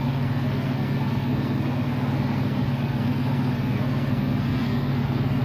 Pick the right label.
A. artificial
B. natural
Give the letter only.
A